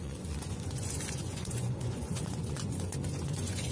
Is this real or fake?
fake